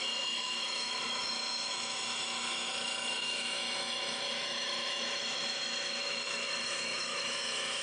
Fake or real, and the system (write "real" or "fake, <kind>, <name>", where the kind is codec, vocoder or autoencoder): fake, autoencoder, DAC-VAE